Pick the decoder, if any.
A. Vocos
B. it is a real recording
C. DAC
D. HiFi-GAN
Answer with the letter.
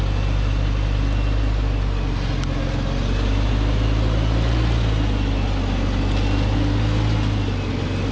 B